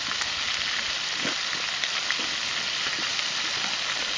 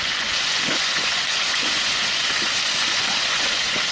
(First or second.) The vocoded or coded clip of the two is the second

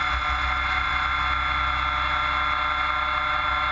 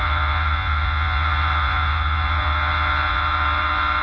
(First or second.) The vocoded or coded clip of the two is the second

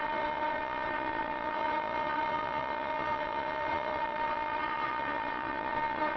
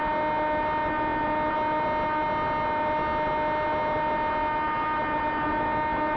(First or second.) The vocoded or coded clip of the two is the first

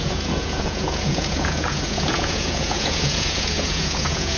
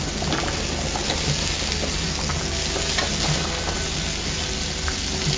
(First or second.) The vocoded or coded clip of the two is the first